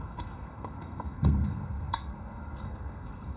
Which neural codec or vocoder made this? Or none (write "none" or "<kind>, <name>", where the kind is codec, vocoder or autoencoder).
codec, SNAC